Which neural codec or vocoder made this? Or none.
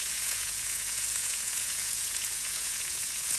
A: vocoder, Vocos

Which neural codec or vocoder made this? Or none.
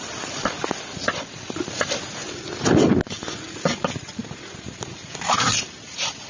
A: none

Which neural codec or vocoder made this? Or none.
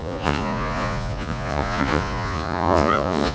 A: vocoder, Vocos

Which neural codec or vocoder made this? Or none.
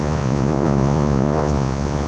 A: vocoder, Vocos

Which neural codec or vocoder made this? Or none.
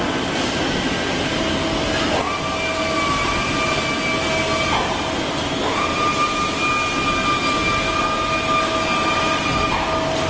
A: none